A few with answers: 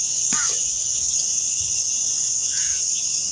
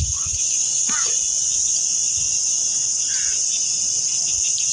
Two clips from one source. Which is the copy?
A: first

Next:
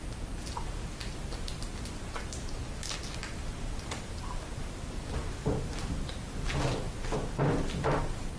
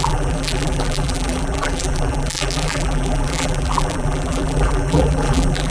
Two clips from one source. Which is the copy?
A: second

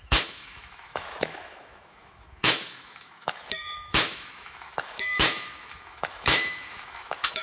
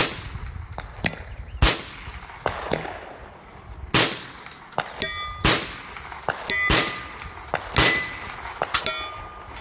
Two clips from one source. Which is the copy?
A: first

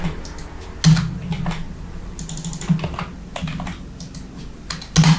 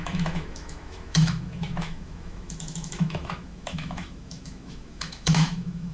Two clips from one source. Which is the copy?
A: second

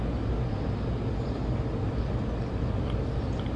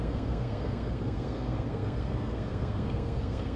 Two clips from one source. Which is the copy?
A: second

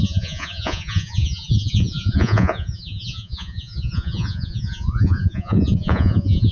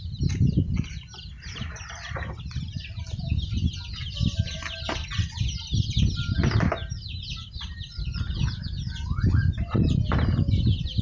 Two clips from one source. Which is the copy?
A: first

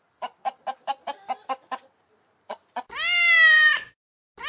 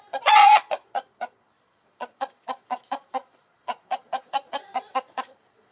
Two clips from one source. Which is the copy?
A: second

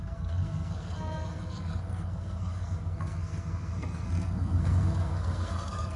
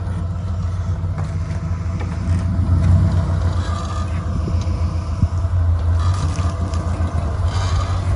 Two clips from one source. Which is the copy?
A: first